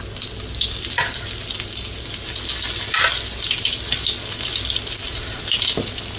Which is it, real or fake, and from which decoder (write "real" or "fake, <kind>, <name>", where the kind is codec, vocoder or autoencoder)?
real